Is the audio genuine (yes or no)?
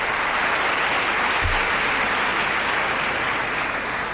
yes